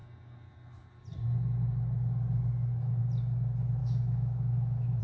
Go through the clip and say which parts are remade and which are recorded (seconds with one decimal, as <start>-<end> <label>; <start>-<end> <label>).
0.0-3.8 recorded; 3.8-5.0 remade